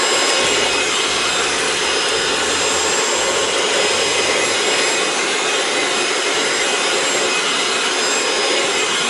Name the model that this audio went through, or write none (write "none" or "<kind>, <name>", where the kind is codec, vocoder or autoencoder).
none